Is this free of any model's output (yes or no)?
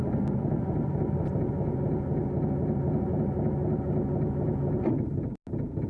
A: yes